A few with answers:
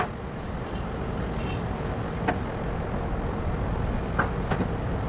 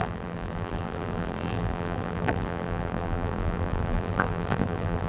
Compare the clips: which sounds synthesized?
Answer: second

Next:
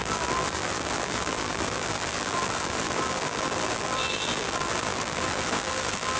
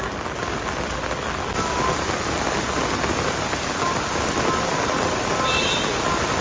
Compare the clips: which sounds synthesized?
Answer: first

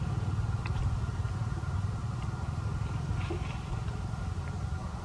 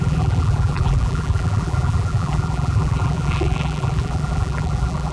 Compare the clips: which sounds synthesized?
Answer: second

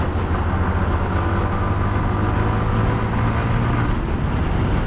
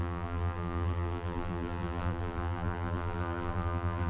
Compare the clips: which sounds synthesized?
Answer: second